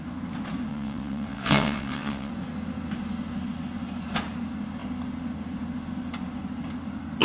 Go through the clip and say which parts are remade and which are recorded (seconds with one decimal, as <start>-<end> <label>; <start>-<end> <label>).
0.0-0.7 recorded; 0.7-2.3 remade; 2.3-7.2 recorded